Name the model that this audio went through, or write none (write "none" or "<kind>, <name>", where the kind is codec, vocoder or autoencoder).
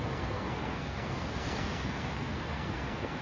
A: codec, SNAC